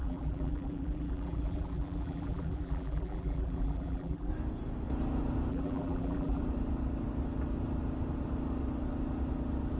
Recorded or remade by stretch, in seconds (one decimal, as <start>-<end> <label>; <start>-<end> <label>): 0.0-4.3 remade; 4.3-5.5 recorded; 5.5-6.4 remade; 6.4-9.8 recorded